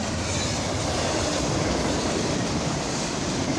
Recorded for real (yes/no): yes